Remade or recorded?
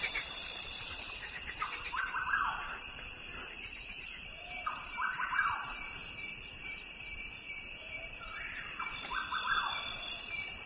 remade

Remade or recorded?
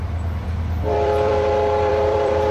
remade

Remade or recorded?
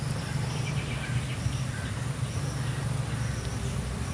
recorded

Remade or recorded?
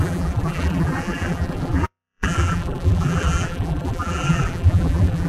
remade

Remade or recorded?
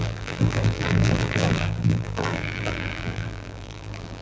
remade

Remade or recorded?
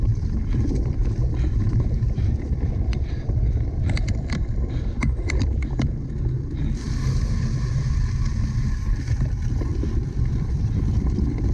remade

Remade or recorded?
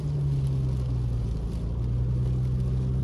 recorded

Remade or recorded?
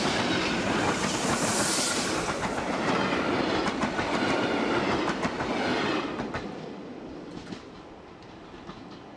recorded